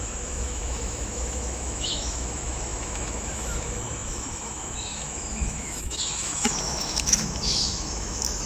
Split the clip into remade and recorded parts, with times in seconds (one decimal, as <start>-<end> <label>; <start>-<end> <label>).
0.0-8.5 remade